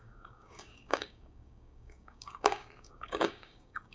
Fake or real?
fake